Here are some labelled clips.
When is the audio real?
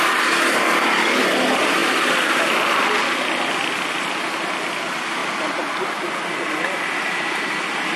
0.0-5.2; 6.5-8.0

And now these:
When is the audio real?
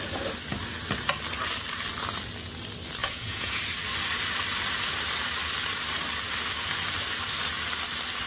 0.0-3.0; 3.6-8.3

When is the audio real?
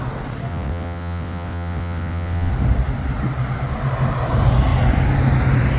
0.0-0.5; 2.5-5.8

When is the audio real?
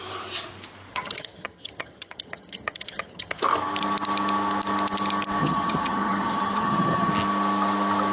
0.0-0.9; 3.4-5.4; 7.1-8.1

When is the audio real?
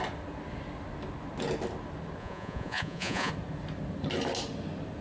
0.0-2.2; 3.3-5.0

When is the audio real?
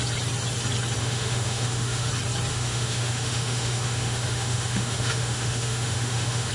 0.0-1.0; 2.1-2.5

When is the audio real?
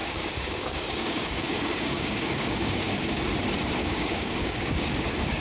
3.2-3.8